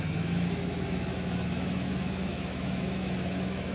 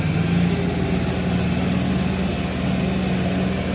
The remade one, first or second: first